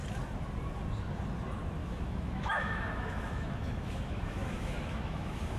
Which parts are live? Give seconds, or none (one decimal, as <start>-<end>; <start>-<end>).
0.0-1.8